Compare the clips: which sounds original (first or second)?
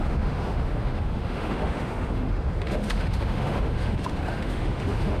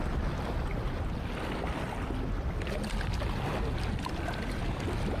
second